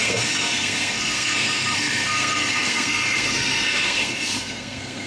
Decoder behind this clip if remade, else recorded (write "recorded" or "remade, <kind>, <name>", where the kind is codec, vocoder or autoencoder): remade, codec, SNAC